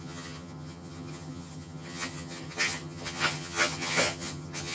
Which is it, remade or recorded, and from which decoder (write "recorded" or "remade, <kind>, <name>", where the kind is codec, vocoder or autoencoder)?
remade, vocoder, HiFi-GAN